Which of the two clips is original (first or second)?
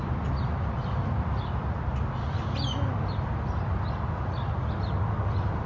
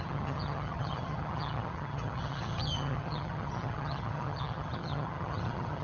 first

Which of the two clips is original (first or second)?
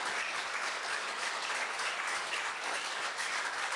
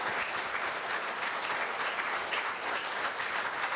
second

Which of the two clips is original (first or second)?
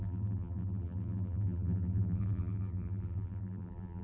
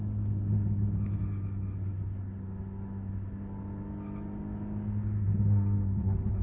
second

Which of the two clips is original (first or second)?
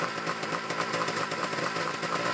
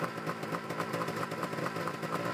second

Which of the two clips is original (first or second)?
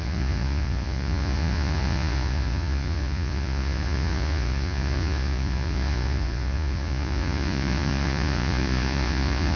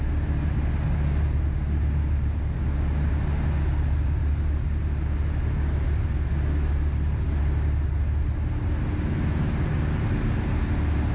second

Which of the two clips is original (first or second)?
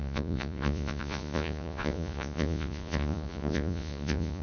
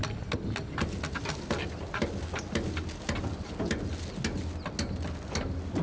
second